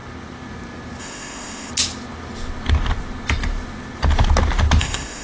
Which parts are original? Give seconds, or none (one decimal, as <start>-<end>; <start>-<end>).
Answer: 0.0-1.0; 1.7-4.8